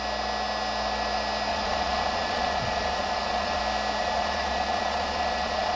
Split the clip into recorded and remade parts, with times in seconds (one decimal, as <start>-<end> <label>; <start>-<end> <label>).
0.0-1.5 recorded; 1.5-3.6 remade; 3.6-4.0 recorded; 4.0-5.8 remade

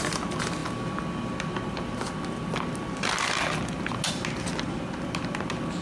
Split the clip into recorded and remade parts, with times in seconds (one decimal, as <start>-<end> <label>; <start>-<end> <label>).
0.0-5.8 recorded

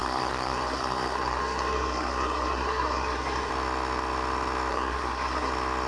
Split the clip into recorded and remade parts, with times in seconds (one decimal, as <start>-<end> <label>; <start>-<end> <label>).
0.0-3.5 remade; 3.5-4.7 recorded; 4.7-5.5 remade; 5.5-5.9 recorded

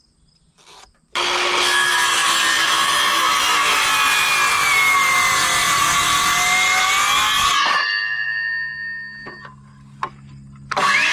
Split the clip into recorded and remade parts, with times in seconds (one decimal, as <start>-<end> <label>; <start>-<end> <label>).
0.0-11.1 recorded